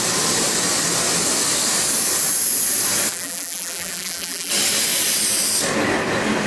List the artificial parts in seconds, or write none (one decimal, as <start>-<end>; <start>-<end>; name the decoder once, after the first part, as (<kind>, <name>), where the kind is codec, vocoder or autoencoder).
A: 3.1-4.5 (vocoder, BigVGAN v2)